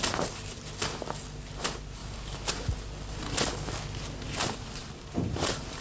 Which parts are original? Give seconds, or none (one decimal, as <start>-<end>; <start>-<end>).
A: 0.0-5.8